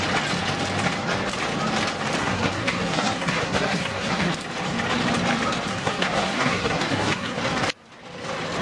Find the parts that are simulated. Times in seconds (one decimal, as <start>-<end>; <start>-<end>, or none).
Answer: 2.2-4.3; 5.7-7.4